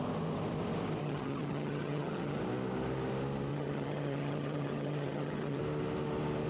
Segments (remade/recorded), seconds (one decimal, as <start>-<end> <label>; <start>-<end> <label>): 0.0-1.0 recorded; 1.0-2.4 remade; 2.4-3.5 recorded; 3.5-5.6 remade; 5.6-6.5 recorded